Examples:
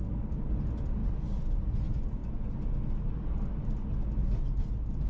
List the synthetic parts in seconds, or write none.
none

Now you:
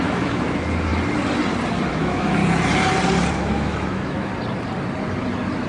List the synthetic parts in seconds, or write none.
0.0-0.9 (autoencoder, DAC-VAE); 1.9-2.4; 3.3-4.3